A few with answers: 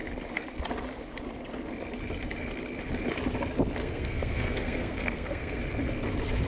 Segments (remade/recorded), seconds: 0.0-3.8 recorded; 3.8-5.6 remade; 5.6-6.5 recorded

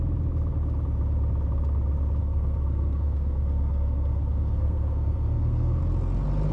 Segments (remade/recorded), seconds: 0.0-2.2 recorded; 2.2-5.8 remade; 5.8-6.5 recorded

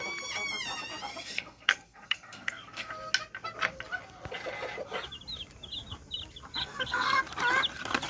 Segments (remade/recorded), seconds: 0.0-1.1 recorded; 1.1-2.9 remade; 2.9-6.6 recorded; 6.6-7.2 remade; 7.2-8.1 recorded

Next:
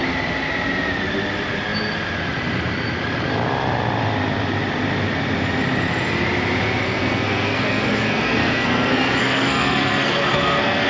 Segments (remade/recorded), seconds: 0.0-6.8 recorded; 6.8-10.9 remade

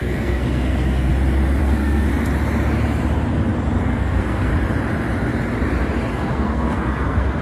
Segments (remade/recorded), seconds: 0.0-1.1 remade; 1.1-1.6 recorded; 1.6-2.1 remade; 2.1-3.8 recorded; 3.8-4.5 remade; 4.5-6.1 recorded; 6.1-7.4 remade

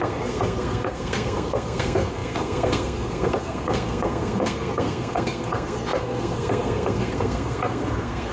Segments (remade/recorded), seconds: 0.0-8.3 remade